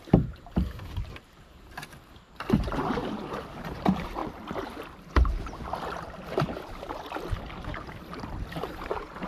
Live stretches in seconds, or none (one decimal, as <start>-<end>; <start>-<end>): 3.0-3.5; 4.2-8.2